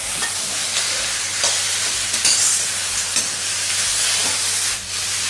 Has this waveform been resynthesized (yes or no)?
yes